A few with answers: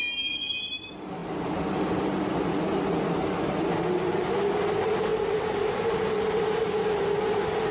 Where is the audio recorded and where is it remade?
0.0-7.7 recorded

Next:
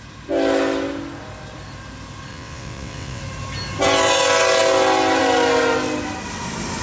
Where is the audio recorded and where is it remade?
0.0-2.3 recorded; 2.3-3.2 remade; 3.2-6.8 recorded

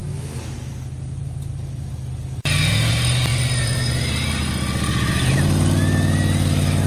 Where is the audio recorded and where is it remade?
0.0-3.3 recorded; 3.3-3.8 remade; 3.8-6.9 recorded

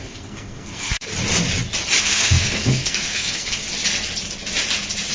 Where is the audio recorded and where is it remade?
0.0-1.1 remade; 1.1-2.0 recorded; 2.0-3.6 remade; 3.6-5.1 recorded

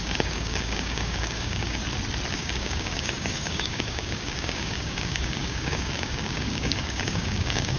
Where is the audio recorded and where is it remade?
0.0-1.8 remade; 1.8-2.3 recorded; 2.3-7.8 remade